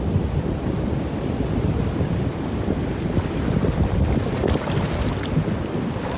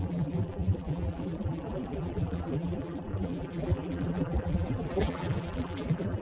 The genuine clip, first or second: first